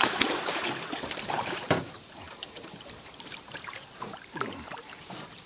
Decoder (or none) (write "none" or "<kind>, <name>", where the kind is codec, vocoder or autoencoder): vocoder, BigVGAN v2